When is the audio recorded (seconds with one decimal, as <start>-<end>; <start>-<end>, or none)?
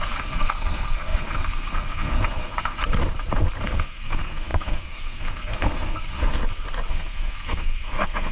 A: 2.8-3.6; 6.4-6.9